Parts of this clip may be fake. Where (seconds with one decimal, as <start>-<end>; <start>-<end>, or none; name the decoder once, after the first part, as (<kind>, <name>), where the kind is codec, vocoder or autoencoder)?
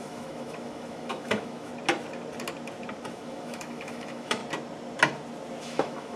0.0-1.7 (autoencoder, DAC-VAE); 3.1-4.4; 5.6-6.2